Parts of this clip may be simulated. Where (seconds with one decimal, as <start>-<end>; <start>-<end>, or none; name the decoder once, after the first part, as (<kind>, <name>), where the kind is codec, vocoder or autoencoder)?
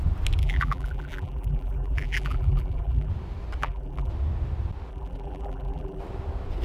0.4-3.1 (vocoder, BigVGAN v2); 3.6-4.1; 4.9-6.0